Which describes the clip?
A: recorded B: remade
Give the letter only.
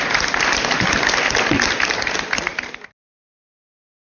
A